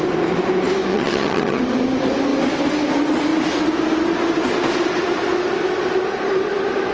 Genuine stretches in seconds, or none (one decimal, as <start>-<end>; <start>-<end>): 0.0-0.9; 1.6-6.9